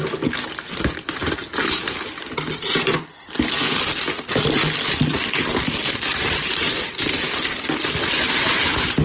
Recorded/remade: recorded